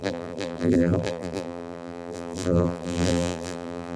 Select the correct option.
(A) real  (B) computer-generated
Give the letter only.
B